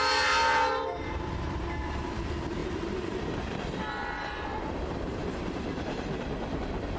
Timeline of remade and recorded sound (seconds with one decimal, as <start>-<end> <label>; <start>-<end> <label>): 0.0-0.4 recorded; 0.4-2.2 remade; 2.2-2.6 recorded; 2.6-6.6 remade; 6.6-7.0 recorded